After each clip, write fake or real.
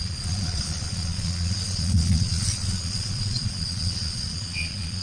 fake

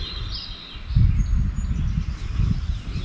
real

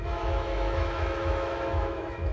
fake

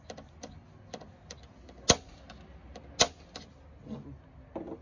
real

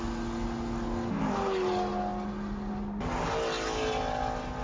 real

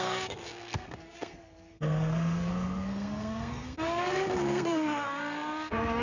fake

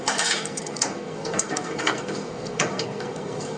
fake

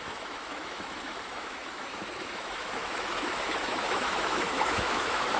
fake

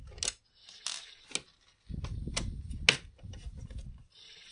real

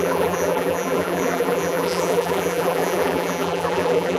fake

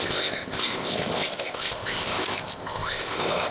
fake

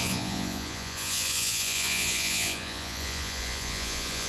fake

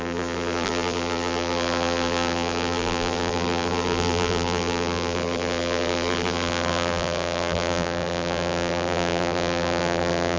fake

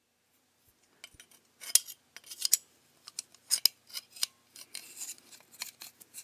real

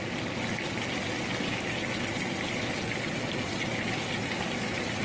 real